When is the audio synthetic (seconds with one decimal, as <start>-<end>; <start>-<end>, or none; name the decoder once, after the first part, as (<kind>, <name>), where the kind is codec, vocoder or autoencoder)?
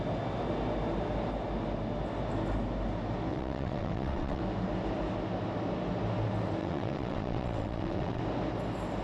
3.3-4.4 (vocoder, WaveNeXt); 6.6-8.2